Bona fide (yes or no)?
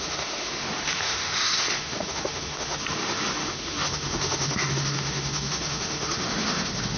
no